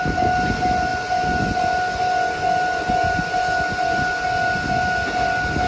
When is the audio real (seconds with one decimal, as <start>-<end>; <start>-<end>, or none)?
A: 0.0-5.7